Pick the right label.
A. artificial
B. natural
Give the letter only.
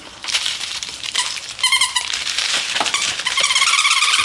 A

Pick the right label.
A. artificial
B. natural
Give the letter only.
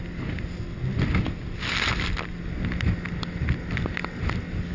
B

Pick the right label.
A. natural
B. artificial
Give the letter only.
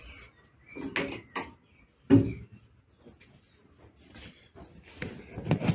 A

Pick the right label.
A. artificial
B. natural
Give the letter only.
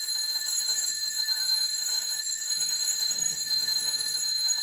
A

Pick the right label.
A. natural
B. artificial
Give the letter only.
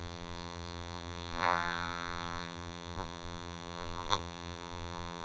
B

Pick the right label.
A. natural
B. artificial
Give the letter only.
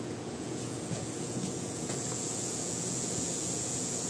B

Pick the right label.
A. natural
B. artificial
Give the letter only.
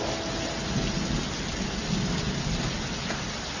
A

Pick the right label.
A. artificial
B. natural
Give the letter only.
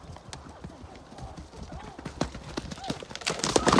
B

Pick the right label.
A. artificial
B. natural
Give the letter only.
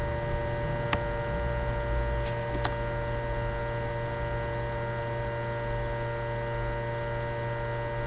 B